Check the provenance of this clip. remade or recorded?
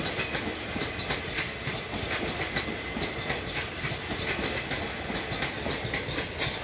recorded